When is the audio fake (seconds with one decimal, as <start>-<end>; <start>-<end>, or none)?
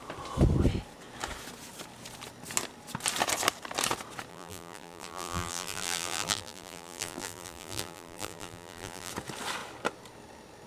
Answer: 4.3-9.1